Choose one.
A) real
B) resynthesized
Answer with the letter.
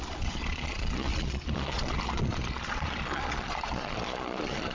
B